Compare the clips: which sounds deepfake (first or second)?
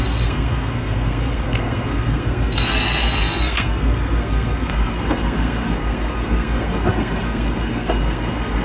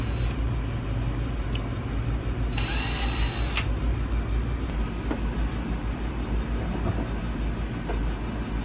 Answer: first